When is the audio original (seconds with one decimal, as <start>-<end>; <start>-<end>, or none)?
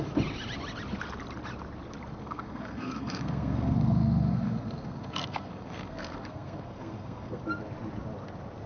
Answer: 0.0-2.2; 7.4-8.7